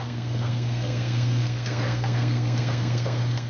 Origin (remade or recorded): remade